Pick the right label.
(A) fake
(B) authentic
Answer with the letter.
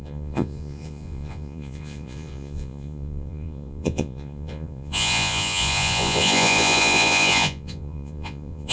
A